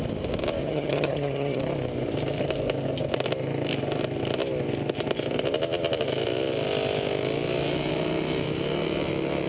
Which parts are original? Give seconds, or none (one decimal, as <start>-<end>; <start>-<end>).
0.0-0.6; 1.6-9.5